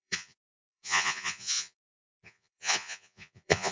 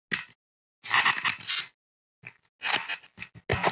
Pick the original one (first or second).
second